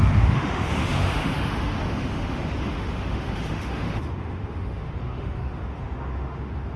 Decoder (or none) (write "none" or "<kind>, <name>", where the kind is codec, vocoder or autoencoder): autoencoder, DAC-VAE